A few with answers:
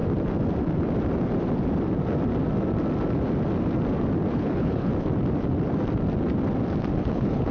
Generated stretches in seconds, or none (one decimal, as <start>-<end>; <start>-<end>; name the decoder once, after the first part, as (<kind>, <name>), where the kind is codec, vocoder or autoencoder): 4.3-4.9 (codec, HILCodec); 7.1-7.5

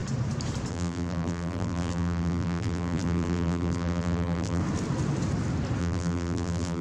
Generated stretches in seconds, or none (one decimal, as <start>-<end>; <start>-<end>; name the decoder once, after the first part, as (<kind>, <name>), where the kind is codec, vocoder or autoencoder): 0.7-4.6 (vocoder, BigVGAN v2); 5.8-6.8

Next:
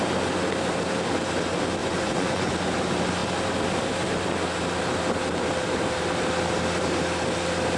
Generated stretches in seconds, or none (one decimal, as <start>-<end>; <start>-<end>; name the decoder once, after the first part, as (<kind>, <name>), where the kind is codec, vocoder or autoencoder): 1.8-2.5 (vocoder, Vocos)